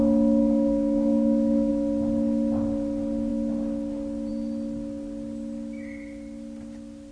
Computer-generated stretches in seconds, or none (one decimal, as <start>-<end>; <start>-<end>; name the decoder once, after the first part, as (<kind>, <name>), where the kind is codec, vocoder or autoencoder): 0.4-1.7 (codec, DAC)